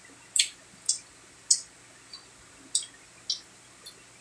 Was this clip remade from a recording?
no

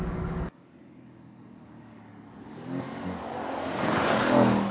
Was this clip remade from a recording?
yes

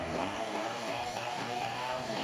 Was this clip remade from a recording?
yes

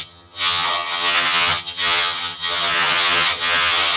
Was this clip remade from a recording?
yes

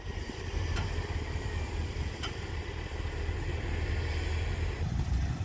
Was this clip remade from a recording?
no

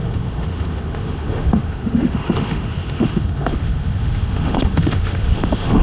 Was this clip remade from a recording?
yes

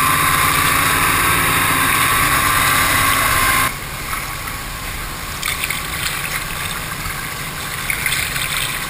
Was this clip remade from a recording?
no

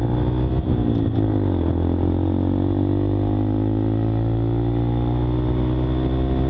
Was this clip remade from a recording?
no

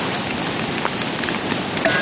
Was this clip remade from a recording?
no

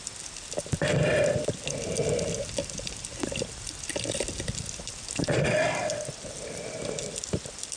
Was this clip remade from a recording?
no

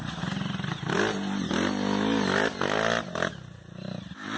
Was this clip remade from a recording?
no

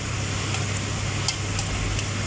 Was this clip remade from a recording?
no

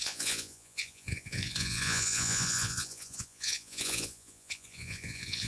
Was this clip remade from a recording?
yes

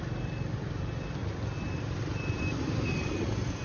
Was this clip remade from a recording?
no